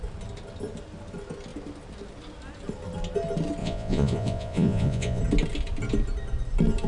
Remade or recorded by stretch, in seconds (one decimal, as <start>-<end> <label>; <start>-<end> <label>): 0.0-3.6 recorded; 3.6-5.2 remade; 5.2-6.9 recorded